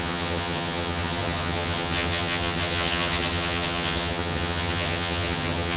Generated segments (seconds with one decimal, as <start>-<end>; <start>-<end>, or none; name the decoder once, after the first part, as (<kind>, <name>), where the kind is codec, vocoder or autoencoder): 0.0-5.8 (vocoder, HiFi-GAN)